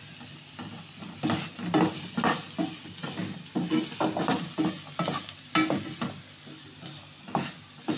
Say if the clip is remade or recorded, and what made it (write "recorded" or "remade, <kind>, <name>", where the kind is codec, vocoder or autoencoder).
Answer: recorded